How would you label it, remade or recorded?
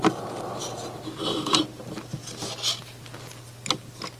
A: recorded